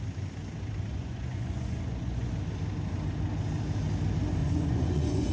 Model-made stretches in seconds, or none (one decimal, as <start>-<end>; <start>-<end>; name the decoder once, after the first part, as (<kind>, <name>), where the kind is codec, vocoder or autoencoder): 0.9-2.3 (vocoder, Vocos); 4.4-5.3